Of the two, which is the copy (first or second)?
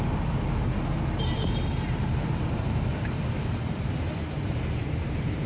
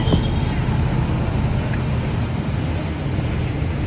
first